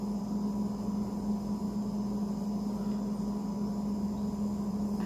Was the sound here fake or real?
real